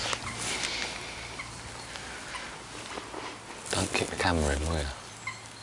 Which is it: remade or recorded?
recorded